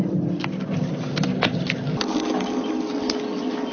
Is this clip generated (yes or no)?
no